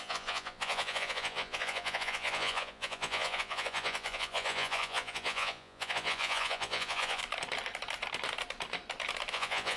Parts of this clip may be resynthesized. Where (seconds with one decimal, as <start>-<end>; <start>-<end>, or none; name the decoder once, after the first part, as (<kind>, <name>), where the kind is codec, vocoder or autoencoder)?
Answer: 0.0-7.2 (vocoder, Vocos); 9.3-9.8